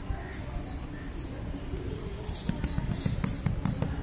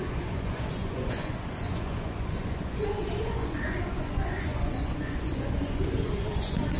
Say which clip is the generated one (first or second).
second